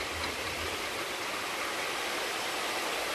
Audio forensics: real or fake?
real